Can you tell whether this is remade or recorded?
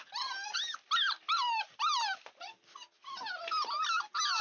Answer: recorded